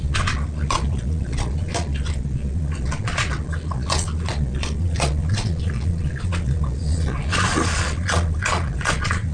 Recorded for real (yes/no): no